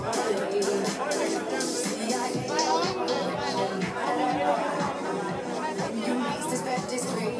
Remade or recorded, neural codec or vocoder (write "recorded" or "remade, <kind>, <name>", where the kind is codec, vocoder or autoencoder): recorded